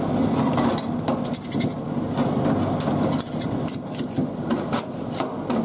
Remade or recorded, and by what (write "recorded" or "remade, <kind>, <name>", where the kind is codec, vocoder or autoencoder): recorded